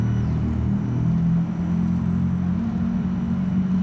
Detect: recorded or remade recorded